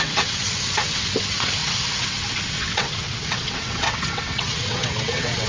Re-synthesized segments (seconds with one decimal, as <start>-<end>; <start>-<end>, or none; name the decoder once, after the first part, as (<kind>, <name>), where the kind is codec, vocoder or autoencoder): 0.0-5.5 (vocoder, WaveNeXt)